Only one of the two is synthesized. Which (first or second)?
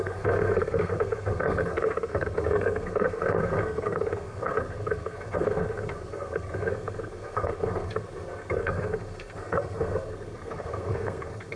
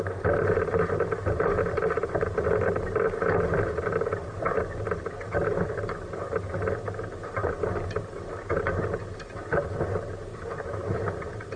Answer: first